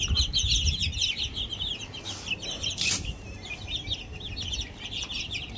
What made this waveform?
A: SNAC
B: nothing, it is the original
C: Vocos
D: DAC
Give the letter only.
B